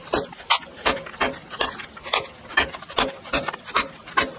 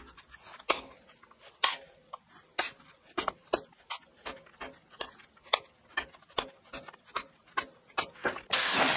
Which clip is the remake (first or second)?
first